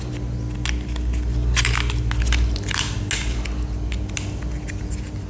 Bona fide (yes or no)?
yes